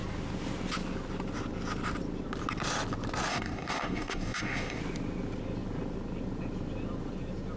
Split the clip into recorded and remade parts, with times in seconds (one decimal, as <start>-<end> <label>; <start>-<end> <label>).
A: 0.0-3.3 recorded; 3.3-4.8 remade; 4.8-7.6 recorded